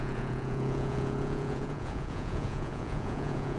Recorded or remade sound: remade